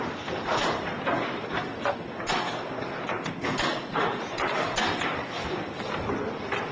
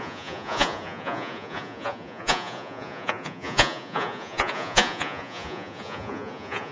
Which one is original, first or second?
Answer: first